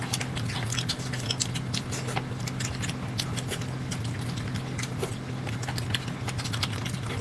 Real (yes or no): yes